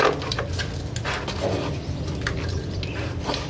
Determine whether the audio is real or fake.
real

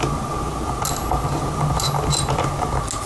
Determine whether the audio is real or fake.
real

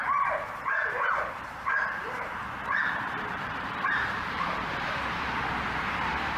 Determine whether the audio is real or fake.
fake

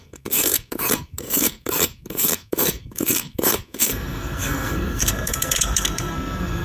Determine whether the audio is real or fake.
fake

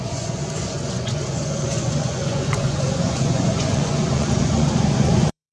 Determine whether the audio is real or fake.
fake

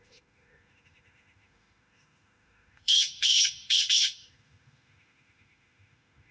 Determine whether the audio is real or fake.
fake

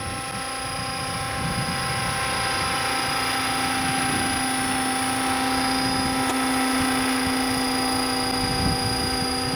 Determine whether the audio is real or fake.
real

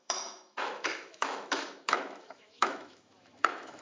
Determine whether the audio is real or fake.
fake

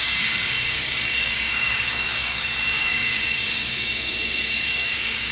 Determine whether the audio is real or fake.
fake